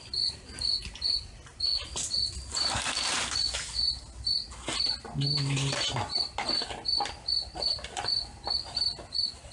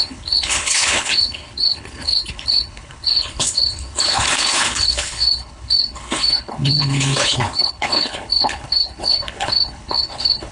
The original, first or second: first